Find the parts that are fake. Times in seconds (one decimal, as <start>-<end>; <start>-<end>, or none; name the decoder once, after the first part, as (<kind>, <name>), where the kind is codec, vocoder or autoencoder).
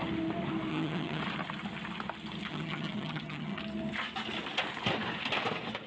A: 0.7-1.2 (vocoder, HiFi-GAN); 2.5-3.6